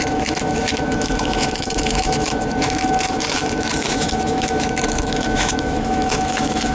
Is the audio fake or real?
fake